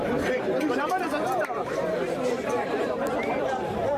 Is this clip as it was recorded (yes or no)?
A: no